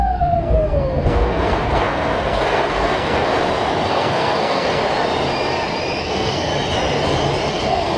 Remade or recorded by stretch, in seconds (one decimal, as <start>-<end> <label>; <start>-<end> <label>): 0.0-3.3 remade; 3.3-3.9 recorded; 3.9-4.8 remade; 4.8-6.0 recorded; 6.0-6.5 remade; 6.5-7.5 recorded; 7.5-8.0 remade